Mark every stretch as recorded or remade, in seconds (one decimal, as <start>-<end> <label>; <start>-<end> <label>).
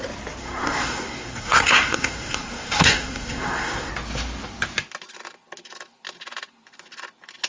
0.0-0.4 recorded; 0.4-3.9 remade; 3.9-7.5 recorded